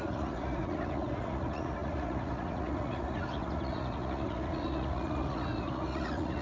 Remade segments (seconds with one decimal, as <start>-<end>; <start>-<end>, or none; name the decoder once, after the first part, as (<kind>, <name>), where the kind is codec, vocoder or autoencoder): 0.0-6.4 (vocoder, Vocos)